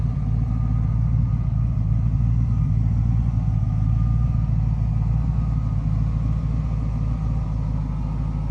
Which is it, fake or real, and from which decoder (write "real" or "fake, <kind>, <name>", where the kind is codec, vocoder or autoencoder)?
real